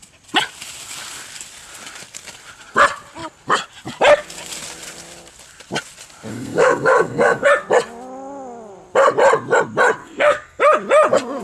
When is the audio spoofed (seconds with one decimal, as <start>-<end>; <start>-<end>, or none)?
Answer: 6.3-7.5; 10.0-10.6